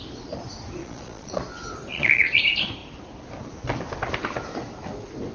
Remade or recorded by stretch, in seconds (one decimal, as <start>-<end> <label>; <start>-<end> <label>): 0.0-0.8 recorded; 0.8-1.4 remade; 1.4-1.9 recorded; 1.9-2.4 remade; 2.4-5.3 recorded